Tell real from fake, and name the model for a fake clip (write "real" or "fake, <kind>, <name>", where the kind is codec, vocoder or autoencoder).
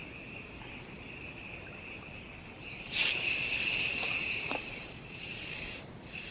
fake, vocoder, BigVGAN v2